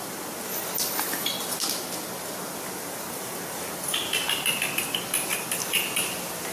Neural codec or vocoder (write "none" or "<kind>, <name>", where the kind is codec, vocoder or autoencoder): none